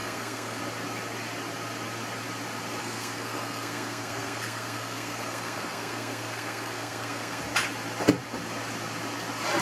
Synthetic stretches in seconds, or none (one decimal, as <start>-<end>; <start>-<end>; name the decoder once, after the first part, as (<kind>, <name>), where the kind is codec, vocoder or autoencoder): 0.0-0.6 (codec, SNAC); 2.8-7.4